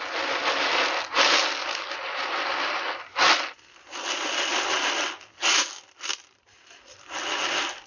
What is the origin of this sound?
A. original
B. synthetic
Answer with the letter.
A